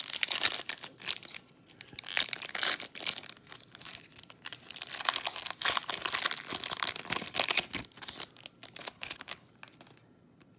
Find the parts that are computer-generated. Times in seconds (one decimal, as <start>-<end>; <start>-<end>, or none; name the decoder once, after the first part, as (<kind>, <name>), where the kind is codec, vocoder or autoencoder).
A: 8.8-9.5 (codec, HILCodec)